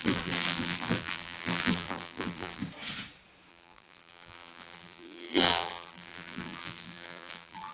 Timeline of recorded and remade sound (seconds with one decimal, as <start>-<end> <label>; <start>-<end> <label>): 0.0-2.6 remade; 2.6-3.5 recorded; 3.5-7.7 remade